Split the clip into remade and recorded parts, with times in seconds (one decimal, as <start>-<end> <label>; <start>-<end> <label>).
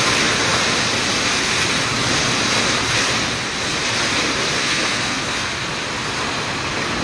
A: 0.0-4.6 recorded; 4.6-5.5 remade; 5.5-7.0 recorded